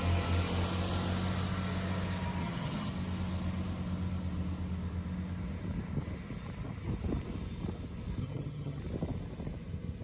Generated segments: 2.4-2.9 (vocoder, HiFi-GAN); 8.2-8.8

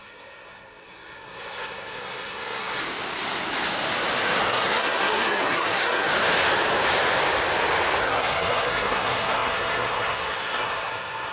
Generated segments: 0.0-2.8 (codec, SNAC); 4.4-6.1; 8.0-11.3